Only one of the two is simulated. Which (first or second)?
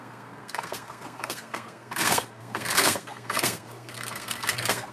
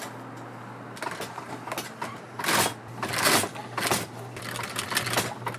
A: first